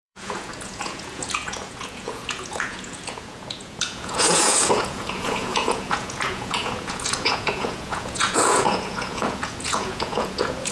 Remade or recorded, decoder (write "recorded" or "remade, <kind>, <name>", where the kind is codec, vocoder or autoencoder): remade, vocoder, Vocos